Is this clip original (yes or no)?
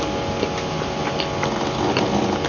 yes